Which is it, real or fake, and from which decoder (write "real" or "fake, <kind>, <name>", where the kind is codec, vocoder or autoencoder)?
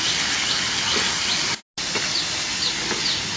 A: real